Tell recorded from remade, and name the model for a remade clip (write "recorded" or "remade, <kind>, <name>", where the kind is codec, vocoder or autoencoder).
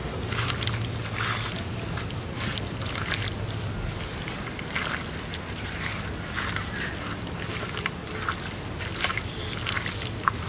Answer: recorded